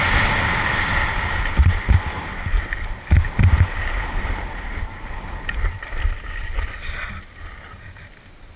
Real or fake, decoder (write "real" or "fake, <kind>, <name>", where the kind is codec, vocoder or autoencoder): real